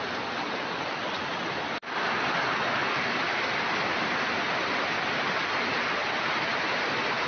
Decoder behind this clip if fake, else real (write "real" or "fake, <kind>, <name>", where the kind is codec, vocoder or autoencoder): real